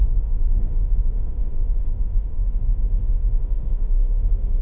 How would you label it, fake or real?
fake